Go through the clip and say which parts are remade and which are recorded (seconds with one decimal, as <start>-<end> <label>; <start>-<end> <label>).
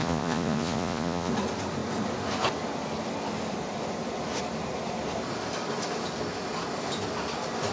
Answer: 0.0-1.3 remade; 1.3-7.7 recorded